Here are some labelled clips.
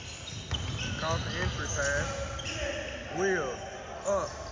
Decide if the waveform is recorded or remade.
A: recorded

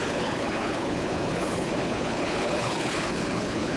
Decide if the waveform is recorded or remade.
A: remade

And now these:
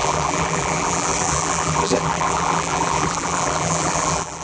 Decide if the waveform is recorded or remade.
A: remade